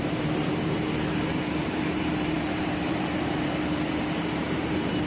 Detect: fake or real fake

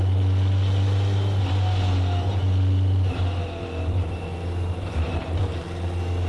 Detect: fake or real real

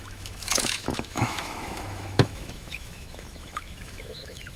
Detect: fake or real fake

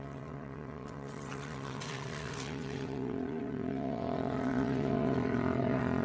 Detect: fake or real fake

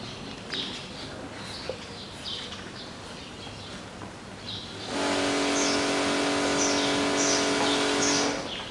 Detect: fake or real real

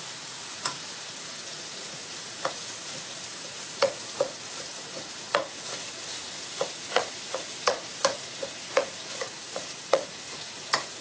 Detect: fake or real fake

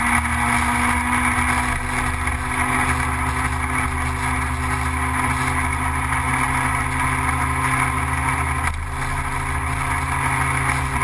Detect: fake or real real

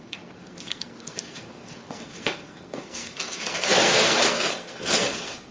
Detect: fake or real fake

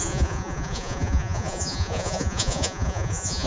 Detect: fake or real fake